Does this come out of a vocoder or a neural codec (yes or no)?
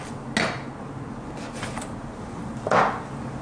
no